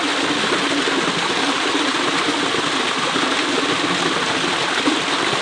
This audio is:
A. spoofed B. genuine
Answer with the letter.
B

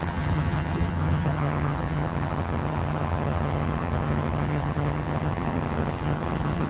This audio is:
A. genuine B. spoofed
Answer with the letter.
B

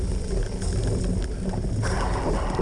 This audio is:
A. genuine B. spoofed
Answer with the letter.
A